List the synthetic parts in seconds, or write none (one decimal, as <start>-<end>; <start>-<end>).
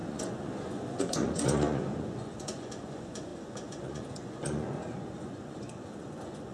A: 0.0-6.5